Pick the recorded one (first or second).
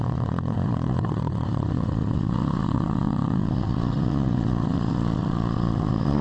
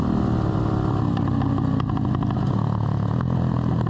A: second